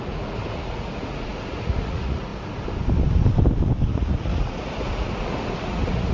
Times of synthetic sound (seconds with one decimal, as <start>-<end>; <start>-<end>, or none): 0.0-2.3; 3.9-6.1